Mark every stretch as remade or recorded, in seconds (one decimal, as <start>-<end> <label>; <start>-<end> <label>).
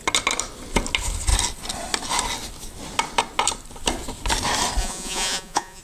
0.0-4.8 recorded; 4.8-5.8 remade